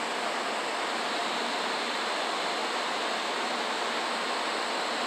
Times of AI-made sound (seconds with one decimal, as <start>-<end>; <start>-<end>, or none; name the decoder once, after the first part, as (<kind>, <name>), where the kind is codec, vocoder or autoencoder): 1.2-2.1 (vocoder, BigVGAN v2); 2.6-3.1